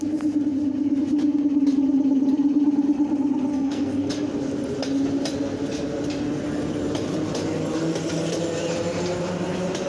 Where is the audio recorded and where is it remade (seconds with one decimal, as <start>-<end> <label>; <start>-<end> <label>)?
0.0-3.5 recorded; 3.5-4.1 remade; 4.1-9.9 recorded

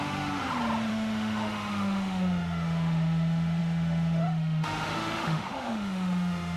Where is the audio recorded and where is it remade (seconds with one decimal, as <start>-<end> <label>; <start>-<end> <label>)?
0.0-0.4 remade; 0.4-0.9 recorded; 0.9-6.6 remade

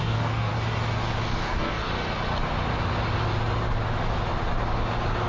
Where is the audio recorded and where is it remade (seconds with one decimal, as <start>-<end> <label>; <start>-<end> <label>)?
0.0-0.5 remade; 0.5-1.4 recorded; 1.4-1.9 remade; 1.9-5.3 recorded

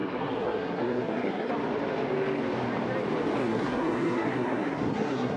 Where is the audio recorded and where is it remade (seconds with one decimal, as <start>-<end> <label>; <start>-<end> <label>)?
0.0-1.5 remade; 1.5-3.4 recorded; 3.4-5.4 remade

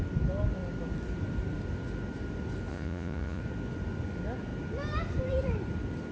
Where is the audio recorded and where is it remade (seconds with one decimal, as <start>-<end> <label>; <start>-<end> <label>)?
0.0-2.7 recorded; 2.7-3.4 remade; 3.4-6.1 recorded